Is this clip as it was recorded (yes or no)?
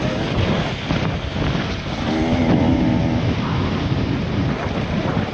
yes